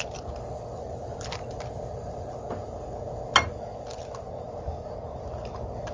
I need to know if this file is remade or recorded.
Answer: recorded